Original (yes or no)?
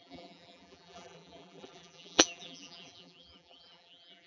no